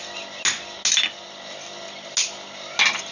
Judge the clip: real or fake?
real